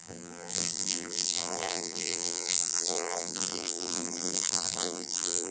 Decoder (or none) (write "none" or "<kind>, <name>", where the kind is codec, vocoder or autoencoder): vocoder, BigVGAN v2